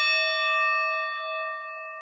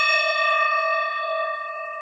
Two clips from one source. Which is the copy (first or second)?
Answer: second